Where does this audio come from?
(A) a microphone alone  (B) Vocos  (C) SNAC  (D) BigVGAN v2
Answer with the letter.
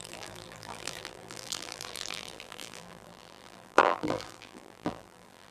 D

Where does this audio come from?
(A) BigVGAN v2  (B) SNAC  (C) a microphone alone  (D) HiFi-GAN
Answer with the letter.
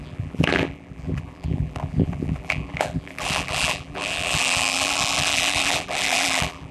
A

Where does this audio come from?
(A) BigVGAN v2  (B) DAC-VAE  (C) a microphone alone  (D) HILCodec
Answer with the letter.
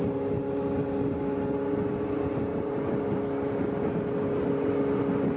C